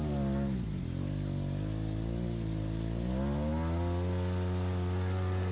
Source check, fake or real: real